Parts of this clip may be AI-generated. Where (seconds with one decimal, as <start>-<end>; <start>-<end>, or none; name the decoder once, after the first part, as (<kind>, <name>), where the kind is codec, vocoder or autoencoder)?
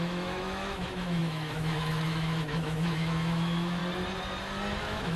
0.0-3.8 (autoencoder, DAC-VAE); 4.8-5.2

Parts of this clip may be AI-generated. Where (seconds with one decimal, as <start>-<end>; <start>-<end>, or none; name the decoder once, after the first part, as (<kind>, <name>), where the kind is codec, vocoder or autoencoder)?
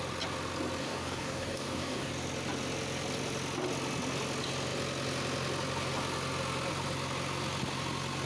0.8-2.1 (codec, DAC)